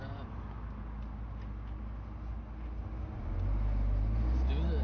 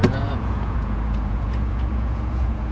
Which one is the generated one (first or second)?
second